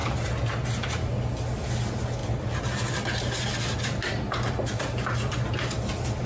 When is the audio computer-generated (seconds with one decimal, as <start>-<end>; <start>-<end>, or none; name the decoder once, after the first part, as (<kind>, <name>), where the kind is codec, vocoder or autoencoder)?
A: none